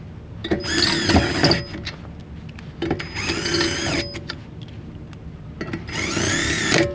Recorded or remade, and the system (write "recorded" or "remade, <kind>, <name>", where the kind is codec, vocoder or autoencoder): recorded